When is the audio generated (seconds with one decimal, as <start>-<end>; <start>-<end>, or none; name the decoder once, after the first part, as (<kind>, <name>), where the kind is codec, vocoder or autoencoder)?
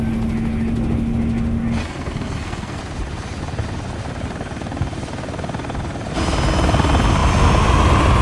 1.8-2.8 (codec, SNAC)